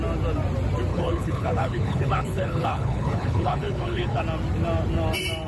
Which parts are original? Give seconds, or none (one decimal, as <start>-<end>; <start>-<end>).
0.0-0.9; 4.2-5.5